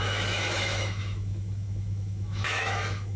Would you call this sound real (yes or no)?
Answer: no